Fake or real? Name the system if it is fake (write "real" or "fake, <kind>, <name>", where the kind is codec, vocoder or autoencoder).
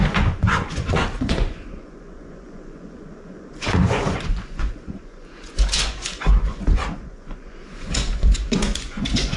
fake, vocoder, Vocos